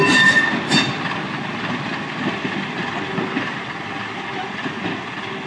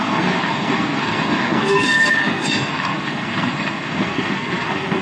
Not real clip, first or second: second